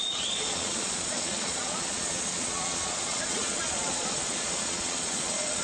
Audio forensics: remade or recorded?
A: remade